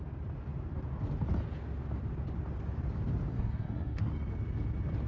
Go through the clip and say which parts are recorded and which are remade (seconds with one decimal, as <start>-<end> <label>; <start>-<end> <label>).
0.0-3.3 recorded; 3.3-4.1 remade; 4.1-5.1 recorded